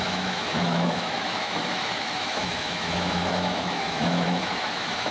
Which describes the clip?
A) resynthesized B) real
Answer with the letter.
A